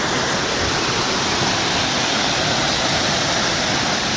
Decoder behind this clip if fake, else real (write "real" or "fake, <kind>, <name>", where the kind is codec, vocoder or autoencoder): real